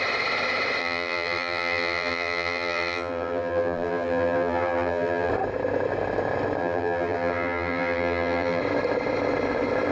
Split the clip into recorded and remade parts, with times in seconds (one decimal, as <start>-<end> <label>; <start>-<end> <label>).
0.0-0.8 recorded; 0.8-5.3 remade; 5.3-6.6 recorded; 6.6-8.6 remade; 8.6-9.9 recorded